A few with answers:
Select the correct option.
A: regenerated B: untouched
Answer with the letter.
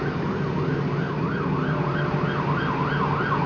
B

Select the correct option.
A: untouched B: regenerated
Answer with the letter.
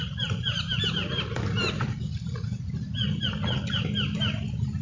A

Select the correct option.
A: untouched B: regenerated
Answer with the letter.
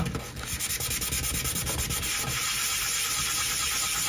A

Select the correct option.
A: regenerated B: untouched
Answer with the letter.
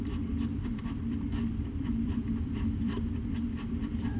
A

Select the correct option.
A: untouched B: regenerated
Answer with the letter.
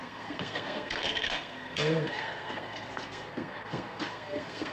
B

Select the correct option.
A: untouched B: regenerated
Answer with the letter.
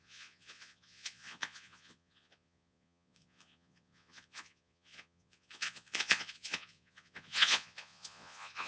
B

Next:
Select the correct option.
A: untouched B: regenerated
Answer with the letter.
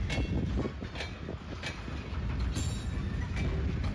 A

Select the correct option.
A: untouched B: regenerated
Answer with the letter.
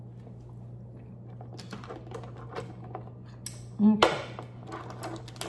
A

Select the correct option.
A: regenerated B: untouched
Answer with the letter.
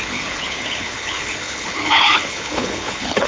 A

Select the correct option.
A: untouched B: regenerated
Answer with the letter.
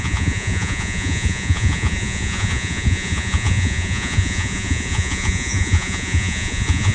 B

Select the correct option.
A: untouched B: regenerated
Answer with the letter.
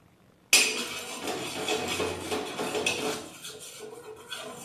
A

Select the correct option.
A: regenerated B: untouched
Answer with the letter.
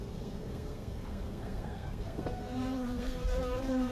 A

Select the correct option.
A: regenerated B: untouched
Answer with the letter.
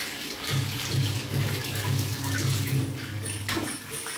A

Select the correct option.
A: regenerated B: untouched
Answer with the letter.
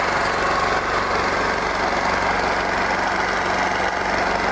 B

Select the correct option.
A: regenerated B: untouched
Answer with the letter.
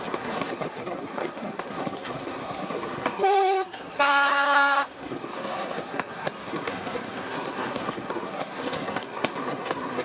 A